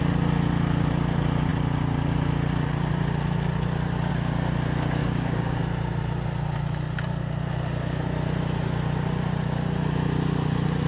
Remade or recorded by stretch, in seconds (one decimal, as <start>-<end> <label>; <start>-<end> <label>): 0.0-5.0 recorded; 5.0-5.6 remade; 5.6-10.9 recorded